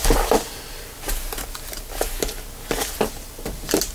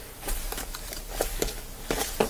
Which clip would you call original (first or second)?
first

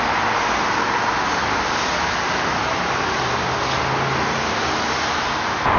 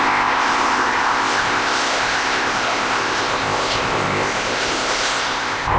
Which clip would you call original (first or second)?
first